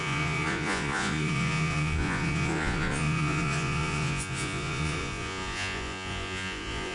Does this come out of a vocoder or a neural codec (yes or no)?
yes